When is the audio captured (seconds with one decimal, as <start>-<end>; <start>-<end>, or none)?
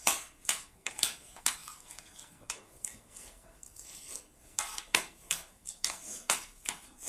none